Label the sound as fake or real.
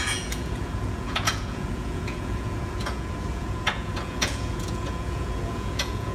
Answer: fake